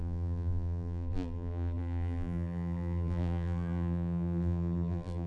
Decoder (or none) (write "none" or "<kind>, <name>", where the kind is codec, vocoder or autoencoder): vocoder, BigVGAN v2